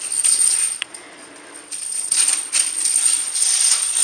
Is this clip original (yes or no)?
no